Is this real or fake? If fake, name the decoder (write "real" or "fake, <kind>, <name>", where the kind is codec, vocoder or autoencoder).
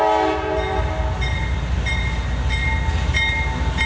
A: real